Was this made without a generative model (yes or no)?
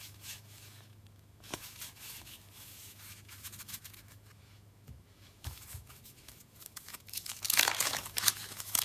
no